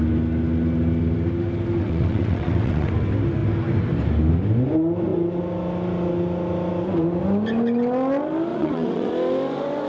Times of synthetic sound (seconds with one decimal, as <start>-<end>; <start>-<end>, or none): 1.8-2.9; 8.5-9.1